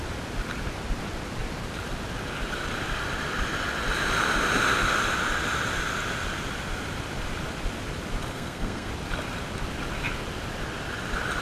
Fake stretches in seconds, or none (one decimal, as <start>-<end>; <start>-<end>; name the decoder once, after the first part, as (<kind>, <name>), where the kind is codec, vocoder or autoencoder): 8.3-8.9 (codec, SNAC)